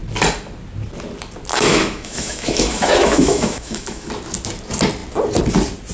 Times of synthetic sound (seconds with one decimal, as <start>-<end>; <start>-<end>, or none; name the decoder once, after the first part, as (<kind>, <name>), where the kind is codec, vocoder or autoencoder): 1.5-4.1 (autoencoder, DAC-VAE)